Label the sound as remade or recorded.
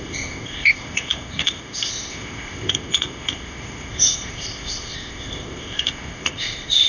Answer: remade